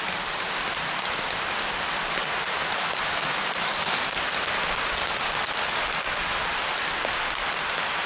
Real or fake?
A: real